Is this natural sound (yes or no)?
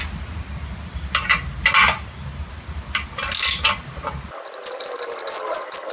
yes